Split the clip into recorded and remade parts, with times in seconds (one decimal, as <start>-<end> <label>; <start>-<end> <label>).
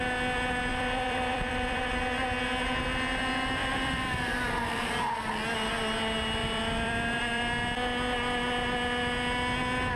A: 0.0-0.7 recorded; 0.7-1.9 remade; 1.9-3.6 recorded; 3.6-4.9 remade; 4.9-6.4 recorded; 6.4-7.4 remade; 7.4-10.0 recorded